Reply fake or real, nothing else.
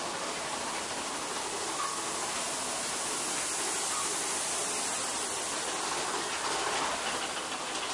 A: real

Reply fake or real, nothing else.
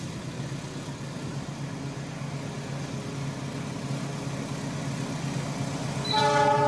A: real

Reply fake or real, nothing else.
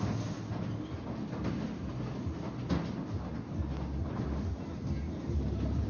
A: real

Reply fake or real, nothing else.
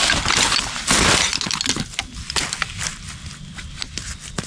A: real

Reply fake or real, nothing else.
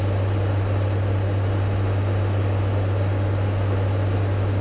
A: real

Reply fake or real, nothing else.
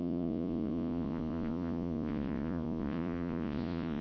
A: fake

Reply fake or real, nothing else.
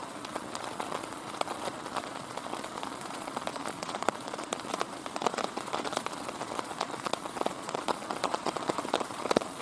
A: fake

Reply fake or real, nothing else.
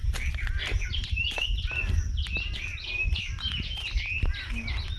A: real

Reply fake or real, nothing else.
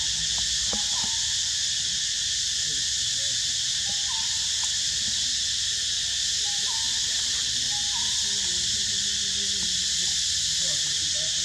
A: real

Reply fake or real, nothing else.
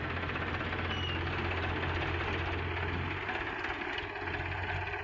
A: real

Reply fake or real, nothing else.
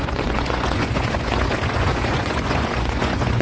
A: fake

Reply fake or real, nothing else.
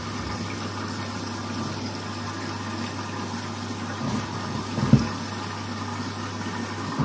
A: real